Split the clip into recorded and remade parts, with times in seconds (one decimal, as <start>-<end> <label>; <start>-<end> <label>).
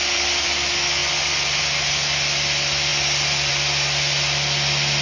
0.0-5.0 recorded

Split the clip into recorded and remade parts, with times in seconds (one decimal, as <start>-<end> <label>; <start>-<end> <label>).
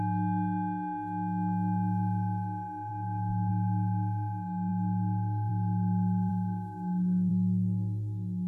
0.0-2.9 recorded; 2.9-3.5 remade; 3.5-6.3 recorded; 6.3-7.3 remade; 7.3-8.5 recorded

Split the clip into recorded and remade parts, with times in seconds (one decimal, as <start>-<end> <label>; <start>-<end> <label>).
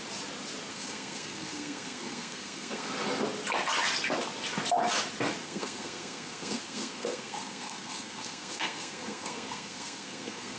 0.0-0.7 recorded; 0.7-2.9 remade; 2.9-5.4 recorded; 5.4-10.6 remade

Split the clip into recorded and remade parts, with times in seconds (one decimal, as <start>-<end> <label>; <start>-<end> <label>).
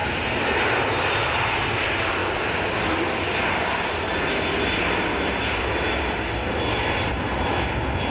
0.0-8.1 recorded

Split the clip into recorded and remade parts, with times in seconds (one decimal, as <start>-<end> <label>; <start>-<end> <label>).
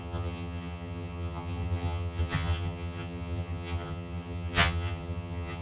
0.0-5.6 remade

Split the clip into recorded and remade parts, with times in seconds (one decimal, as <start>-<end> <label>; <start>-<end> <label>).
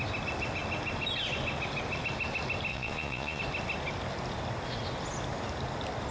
0.0-2.7 recorded; 2.7-3.4 remade; 3.4-6.1 recorded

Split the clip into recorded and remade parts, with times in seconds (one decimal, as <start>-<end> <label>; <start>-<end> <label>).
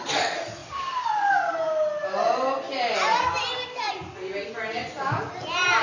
0.0-0.6 recorded; 0.6-1.6 remade; 1.6-5.8 recorded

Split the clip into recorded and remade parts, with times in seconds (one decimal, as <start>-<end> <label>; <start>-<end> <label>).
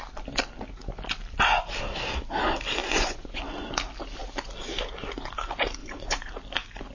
0.0-2.8 recorded; 2.8-3.4 remade; 3.4-5.8 recorded; 5.8-6.3 remade; 6.3-6.9 recorded